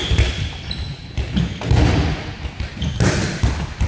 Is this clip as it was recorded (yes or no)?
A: yes